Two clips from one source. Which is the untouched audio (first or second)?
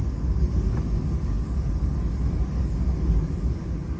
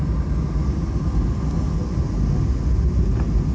second